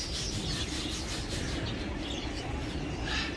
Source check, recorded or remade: recorded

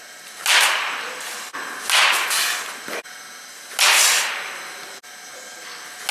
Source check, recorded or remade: recorded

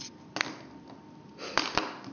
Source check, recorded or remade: recorded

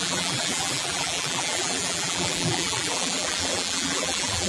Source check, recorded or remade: remade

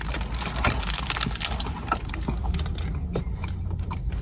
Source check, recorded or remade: recorded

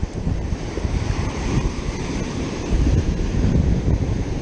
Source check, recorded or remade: remade